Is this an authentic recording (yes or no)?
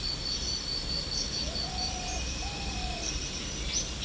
yes